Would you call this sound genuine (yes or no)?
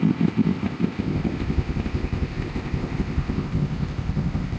no